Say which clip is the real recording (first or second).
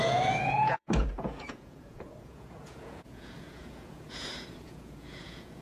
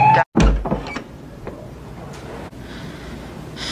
second